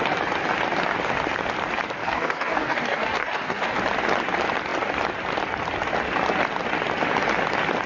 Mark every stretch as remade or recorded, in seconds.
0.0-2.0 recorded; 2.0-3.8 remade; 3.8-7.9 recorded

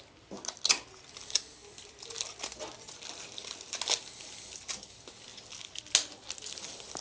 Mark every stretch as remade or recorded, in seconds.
0.0-1.6 recorded; 1.6-3.1 remade; 3.1-7.0 recorded

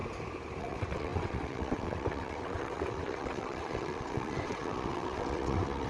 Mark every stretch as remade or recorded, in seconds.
0.0-0.6 recorded; 0.6-5.9 remade

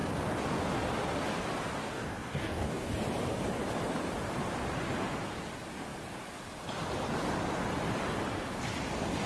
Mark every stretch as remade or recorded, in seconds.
0.0-1.8 recorded; 1.8-2.9 remade; 2.9-9.3 recorded

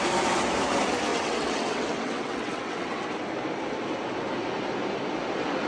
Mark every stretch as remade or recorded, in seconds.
0.0-1.1 recorded; 1.1-3.0 remade; 3.0-5.7 recorded

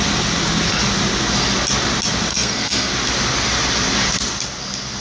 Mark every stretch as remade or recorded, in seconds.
0.0-2.3 recorded; 2.3-2.9 remade; 2.9-5.0 recorded

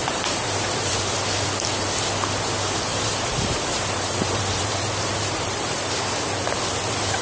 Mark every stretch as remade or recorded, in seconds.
0.0-0.9 remade; 0.9-2.9 recorded; 2.9-5.9 remade; 5.9-7.2 recorded

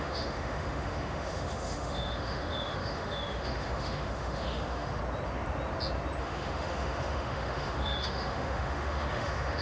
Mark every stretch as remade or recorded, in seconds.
0.0-5.0 remade; 5.0-6.2 recorded; 6.2-9.6 remade